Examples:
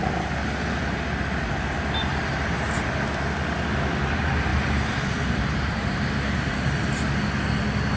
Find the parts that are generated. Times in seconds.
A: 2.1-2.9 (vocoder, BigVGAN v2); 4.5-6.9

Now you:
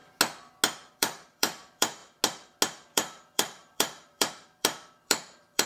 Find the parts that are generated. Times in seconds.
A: 0.9-2.0 (vocoder, BigVGAN v2); 2.9-5.7

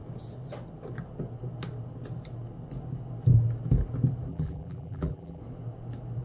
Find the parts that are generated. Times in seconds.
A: 4.3-5.4 (vocoder, BigVGAN v2)

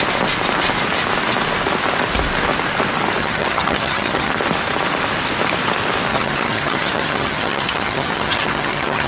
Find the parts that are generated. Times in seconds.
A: 3.2-4.3 (vocoder, HiFi-GAN); 6.1-9.1

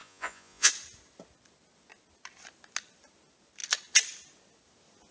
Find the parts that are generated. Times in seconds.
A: 0.0-0.7 (vocoder, Vocos)

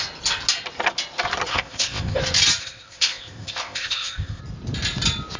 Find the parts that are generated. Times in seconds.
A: 1.5-2.2 (codec, ZipCodec); 2.6-4.4